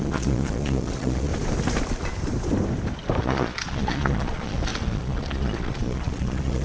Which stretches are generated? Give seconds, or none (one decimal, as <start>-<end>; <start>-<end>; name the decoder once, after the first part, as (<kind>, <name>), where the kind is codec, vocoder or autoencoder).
0.0-1.3 (vocoder, Vocos); 3.2-6.6